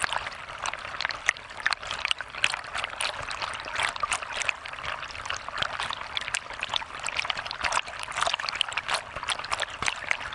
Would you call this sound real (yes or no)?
yes